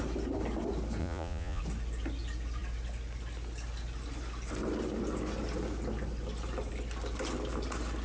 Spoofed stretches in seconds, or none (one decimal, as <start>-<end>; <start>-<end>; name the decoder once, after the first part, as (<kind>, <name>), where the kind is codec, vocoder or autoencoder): 1.0-1.6 (vocoder, Vocos)